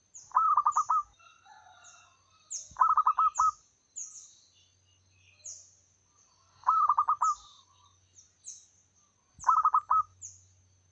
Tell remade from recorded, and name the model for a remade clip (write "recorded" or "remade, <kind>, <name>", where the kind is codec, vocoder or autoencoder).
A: recorded